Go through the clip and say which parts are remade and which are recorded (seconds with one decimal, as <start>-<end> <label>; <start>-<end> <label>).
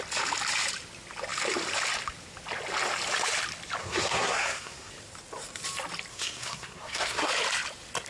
0.0-3.8 recorded; 3.8-4.9 remade; 4.9-6.1 recorded; 6.1-7.3 remade; 7.3-8.1 recorded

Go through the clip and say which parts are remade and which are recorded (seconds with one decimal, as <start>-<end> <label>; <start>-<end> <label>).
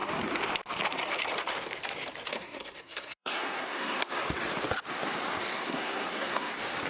0.0-2.3 recorded; 2.3-4.1 remade; 4.1-5.5 recorded; 5.5-6.5 remade; 6.5-6.9 recorded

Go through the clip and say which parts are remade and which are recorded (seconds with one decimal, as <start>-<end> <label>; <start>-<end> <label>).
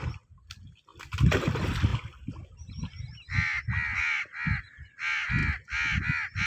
0.0-6.5 recorded